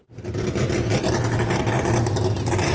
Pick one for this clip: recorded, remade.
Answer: recorded